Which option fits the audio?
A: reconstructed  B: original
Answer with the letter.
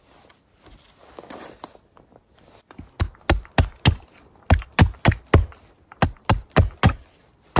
B